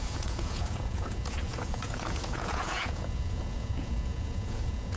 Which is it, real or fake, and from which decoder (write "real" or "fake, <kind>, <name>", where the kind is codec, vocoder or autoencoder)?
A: fake, vocoder, Vocos